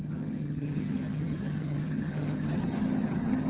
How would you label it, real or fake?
fake